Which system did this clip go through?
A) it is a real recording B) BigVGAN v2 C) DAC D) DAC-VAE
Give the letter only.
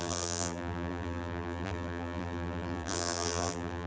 B